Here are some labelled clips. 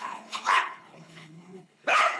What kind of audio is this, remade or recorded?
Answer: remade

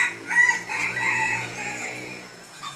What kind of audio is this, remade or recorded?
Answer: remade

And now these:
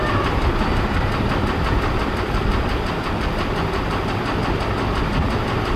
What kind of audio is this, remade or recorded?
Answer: recorded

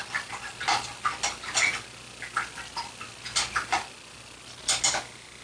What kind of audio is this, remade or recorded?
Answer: recorded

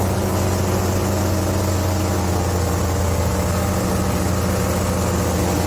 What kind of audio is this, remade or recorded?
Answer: recorded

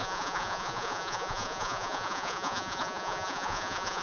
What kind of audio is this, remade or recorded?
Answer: remade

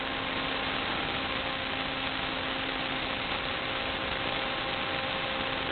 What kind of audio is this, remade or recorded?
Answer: recorded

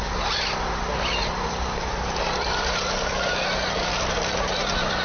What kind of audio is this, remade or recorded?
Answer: recorded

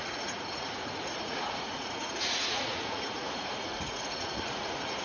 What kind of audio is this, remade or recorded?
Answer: remade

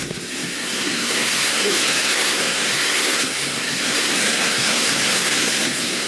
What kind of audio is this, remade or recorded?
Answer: remade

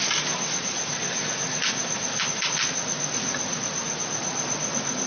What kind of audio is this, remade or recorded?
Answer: recorded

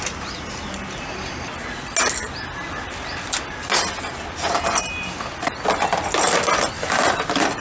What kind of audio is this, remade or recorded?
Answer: recorded